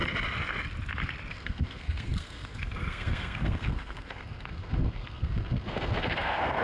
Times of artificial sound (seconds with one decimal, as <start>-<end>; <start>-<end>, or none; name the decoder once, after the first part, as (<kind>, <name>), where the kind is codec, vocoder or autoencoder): 1.3-6.6 (codec, SNAC)